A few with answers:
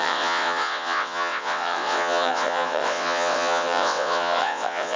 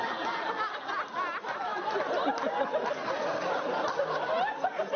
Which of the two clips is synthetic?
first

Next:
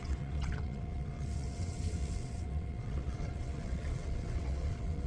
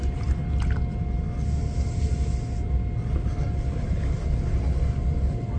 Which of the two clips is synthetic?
first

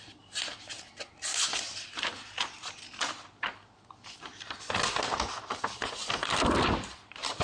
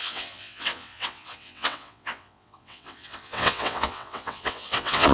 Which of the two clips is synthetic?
second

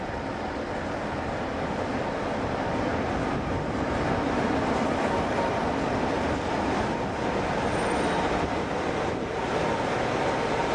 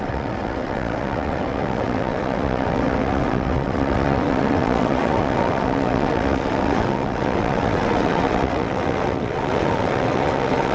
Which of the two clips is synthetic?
second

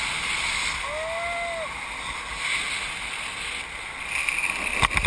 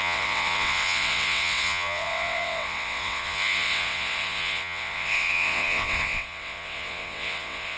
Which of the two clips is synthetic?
second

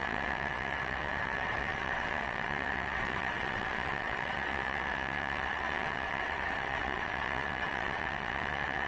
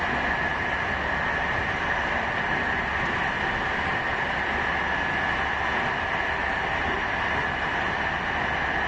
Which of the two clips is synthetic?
first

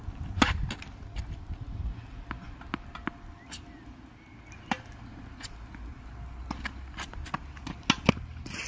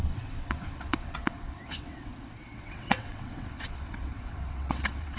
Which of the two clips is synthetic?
second